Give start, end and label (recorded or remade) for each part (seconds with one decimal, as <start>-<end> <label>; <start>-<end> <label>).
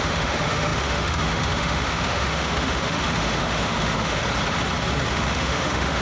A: 0.0-4.2 remade; 4.2-5.1 recorded; 5.1-6.0 remade